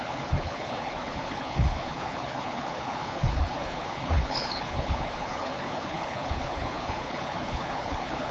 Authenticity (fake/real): fake